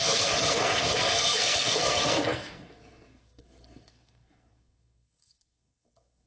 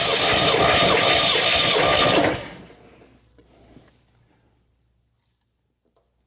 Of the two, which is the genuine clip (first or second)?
second